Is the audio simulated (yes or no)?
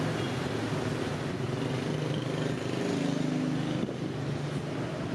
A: no